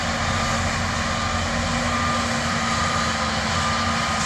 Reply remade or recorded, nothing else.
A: recorded